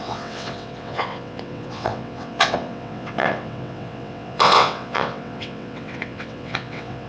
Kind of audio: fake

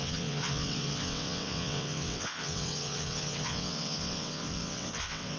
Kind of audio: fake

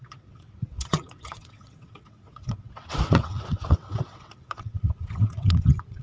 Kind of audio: fake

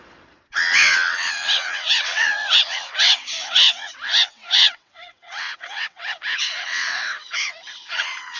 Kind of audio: fake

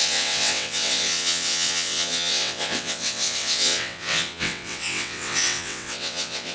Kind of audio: fake